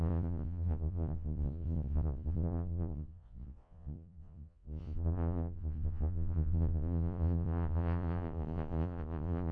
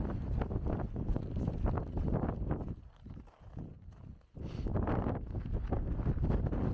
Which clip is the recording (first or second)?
second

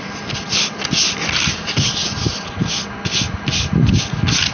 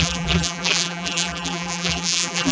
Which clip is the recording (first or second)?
first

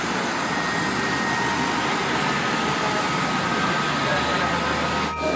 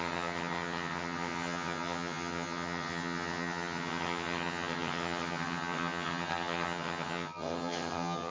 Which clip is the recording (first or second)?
first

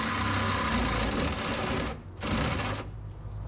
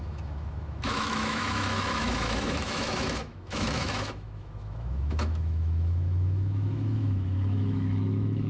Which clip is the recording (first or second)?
first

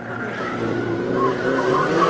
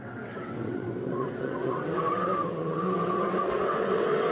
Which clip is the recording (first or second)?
first